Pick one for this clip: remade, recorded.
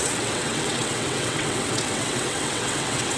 remade